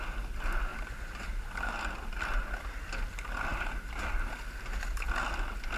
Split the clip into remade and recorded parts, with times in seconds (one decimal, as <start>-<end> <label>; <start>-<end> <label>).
0.0-0.7 recorded; 0.7-2.1 remade; 2.1-3.5 recorded; 3.5-4.3 remade; 4.3-5.8 recorded